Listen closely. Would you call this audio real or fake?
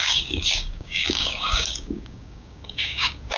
fake